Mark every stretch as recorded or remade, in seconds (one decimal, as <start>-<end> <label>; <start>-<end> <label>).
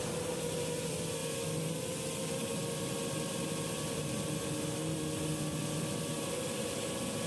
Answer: 0.0-7.3 recorded